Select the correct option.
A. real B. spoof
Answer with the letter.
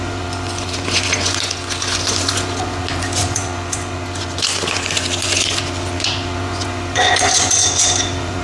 B